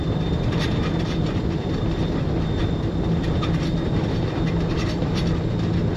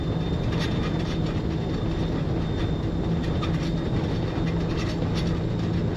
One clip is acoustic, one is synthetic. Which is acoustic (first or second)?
second